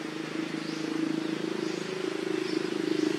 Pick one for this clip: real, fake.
real